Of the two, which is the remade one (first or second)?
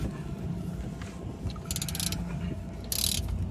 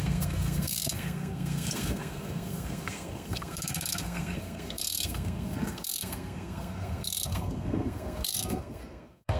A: second